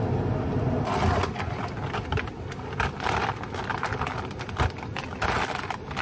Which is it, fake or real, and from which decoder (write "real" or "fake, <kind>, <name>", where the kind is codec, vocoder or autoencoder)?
real